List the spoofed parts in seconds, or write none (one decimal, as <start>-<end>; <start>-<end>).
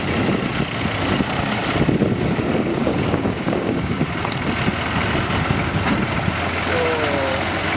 2.7-4.1